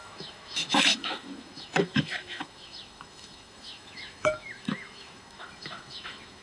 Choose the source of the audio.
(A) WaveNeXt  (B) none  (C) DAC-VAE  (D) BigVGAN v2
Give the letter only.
C